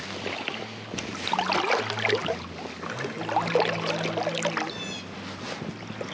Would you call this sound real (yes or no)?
yes